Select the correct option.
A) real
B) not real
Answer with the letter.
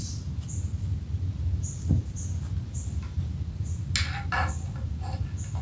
A